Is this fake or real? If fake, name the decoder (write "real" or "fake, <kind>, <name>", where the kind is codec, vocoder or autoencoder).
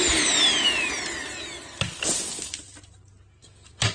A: real